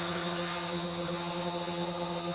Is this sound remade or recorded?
remade